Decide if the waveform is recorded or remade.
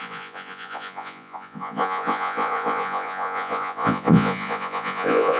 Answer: remade